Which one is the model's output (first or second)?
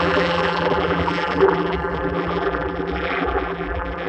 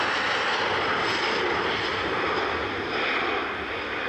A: first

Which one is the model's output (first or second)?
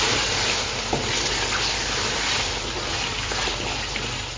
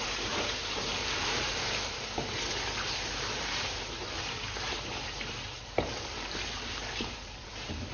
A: second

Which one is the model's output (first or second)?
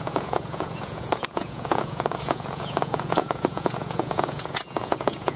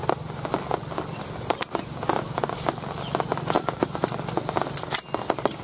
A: first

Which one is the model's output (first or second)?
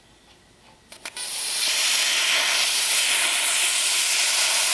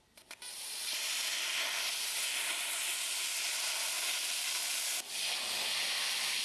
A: second